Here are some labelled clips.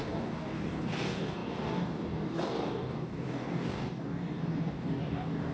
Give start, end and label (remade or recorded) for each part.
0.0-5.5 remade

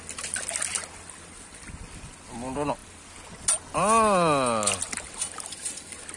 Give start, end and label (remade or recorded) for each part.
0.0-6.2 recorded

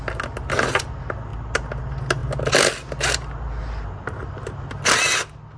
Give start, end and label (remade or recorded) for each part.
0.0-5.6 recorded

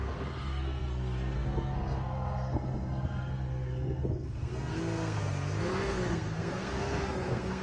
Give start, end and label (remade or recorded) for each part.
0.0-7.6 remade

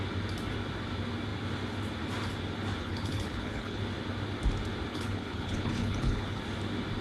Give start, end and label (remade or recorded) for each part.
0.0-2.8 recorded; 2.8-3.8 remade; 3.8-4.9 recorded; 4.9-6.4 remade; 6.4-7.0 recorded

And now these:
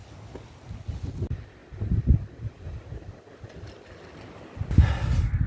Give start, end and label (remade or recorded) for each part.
0.0-5.5 recorded

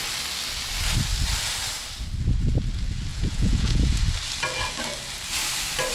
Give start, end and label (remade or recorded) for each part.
0.0-3.1 recorded; 3.1-4.0 remade; 4.0-5.9 recorded